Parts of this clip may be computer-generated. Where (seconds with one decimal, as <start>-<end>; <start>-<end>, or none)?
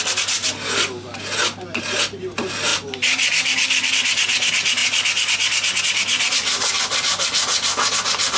none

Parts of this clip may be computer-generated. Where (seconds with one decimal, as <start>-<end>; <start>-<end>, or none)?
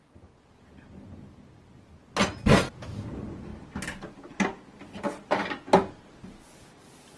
none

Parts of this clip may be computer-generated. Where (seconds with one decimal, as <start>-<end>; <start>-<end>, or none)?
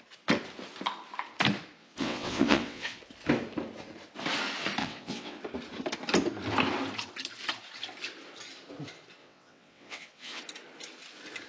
1.8-3.0; 4.8-5.4; 9.2-10.4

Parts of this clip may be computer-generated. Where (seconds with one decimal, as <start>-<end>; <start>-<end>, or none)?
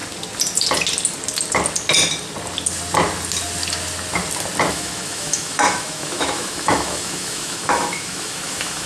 4.7-8.9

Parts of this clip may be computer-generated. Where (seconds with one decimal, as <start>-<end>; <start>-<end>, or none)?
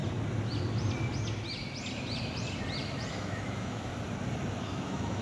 3.1-3.9; 4.6-5.2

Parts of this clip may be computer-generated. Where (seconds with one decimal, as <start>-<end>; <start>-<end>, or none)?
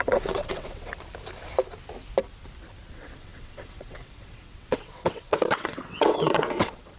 0.0-0.9; 2.9-7.0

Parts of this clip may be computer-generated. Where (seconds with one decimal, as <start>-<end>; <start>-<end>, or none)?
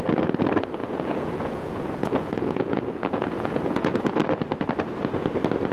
0.8-4.2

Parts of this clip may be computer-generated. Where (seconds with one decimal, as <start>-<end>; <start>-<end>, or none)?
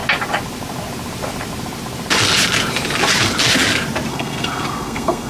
4.1-5.3